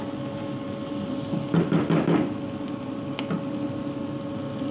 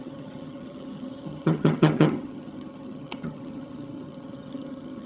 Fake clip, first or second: second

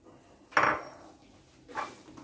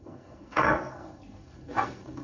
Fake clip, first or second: second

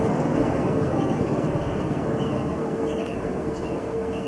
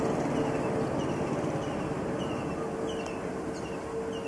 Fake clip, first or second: first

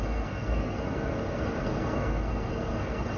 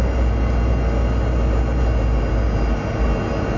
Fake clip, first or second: first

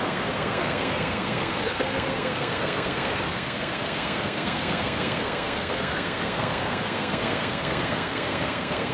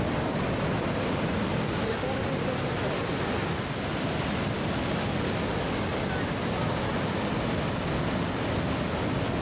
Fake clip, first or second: first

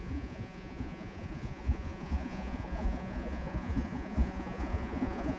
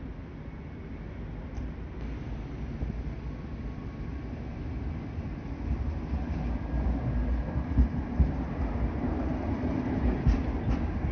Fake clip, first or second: first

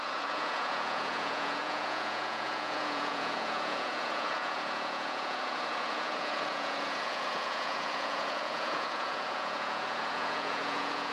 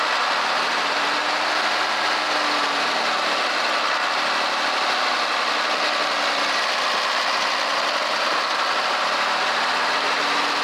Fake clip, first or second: first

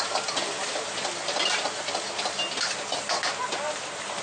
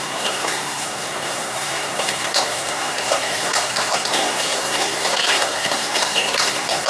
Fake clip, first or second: second